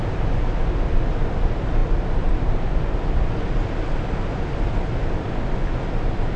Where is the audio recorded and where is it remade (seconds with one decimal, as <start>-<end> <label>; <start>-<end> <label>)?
0.0-6.4 recorded